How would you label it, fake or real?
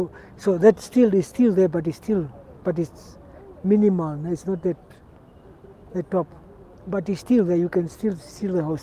real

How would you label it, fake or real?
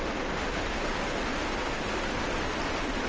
real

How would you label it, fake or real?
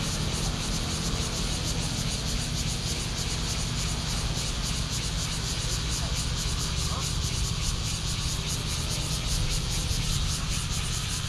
real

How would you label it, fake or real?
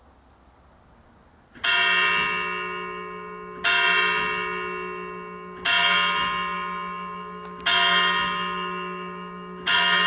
real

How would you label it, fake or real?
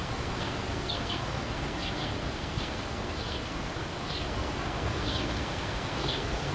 fake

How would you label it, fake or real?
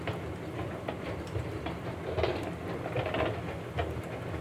real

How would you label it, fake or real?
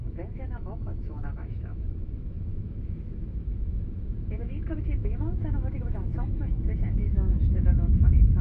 fake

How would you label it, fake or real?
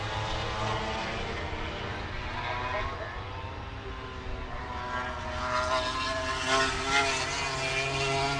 real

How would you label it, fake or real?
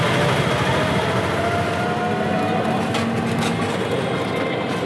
real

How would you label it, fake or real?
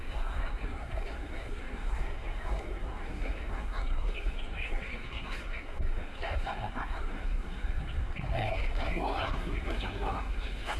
fake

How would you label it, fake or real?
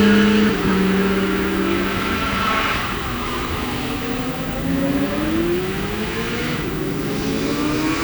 fake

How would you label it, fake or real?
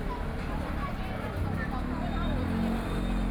real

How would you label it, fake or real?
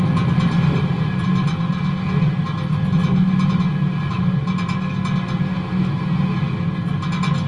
real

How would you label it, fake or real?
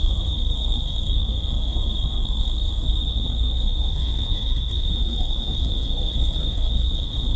fake